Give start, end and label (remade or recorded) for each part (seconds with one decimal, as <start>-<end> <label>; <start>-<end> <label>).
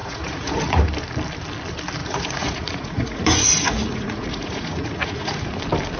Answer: 0.0-0.8 remade; 0.8-2.0 recorded; 2.0-5.6 remade; 5.6-6.0 recorded